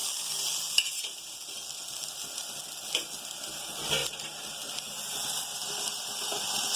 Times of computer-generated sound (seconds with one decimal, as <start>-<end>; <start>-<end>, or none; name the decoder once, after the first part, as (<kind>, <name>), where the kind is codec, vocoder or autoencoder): 4.0-5.5 (vocoder, BigVGAN v2)